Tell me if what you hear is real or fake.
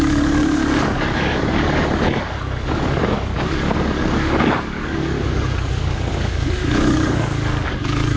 fake